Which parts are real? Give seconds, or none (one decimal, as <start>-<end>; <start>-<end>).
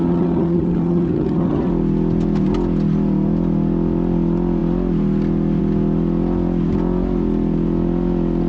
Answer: 1.7-8.5